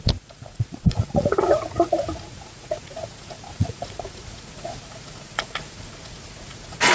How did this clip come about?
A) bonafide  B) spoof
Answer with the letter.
B